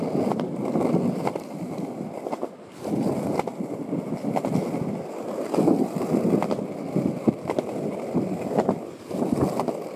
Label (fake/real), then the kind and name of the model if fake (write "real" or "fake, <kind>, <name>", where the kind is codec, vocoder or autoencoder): real